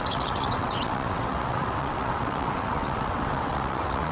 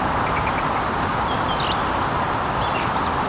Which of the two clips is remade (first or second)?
first